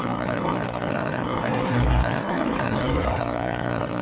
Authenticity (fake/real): fake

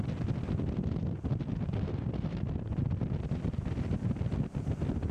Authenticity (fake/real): real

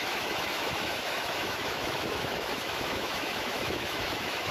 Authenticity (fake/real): fake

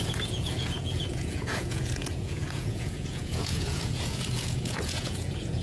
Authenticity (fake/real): fake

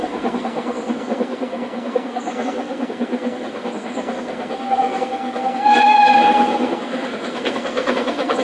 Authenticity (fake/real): fake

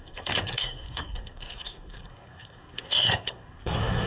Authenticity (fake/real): fake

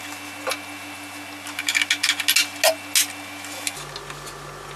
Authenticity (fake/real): real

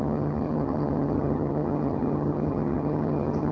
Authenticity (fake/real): fake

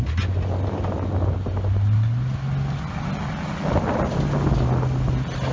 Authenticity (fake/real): real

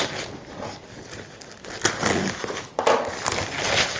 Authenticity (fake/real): real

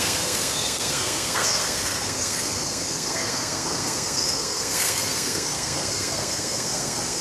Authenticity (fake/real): fake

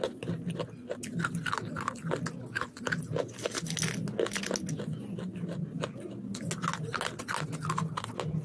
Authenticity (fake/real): real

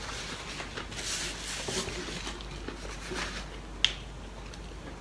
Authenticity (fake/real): real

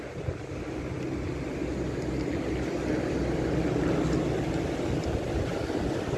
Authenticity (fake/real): real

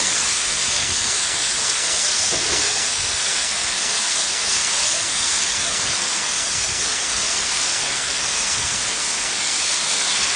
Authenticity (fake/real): fake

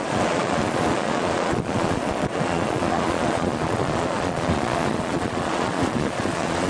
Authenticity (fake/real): fake